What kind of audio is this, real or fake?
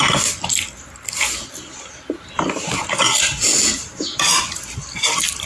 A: real